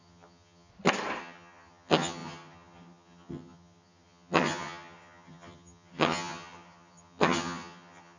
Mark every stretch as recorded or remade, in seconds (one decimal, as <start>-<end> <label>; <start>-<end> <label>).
0.0-0.7 remade; 0.7-1.2 recorded; 1.2-8.2 remade